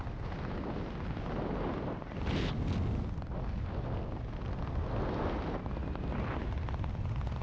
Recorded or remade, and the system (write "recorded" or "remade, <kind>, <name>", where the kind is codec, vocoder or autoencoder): recorded